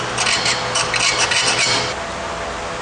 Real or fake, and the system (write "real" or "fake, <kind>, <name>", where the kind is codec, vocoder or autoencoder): real